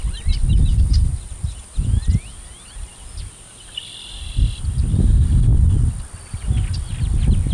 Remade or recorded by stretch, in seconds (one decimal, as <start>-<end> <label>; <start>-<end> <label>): 0.0-7.5 recorded

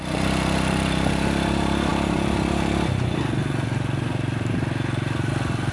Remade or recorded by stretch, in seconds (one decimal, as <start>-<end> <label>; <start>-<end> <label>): 0.0-5.7 recorded